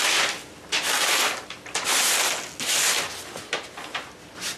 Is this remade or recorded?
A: recorded